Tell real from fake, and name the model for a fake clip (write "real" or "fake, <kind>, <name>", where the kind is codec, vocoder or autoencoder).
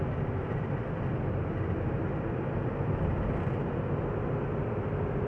real